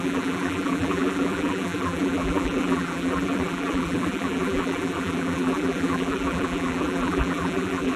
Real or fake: fake